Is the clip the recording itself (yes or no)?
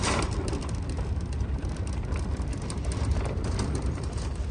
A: no